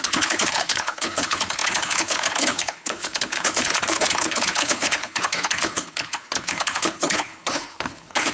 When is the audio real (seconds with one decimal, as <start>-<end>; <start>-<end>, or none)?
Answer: none